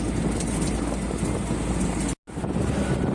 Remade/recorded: recorded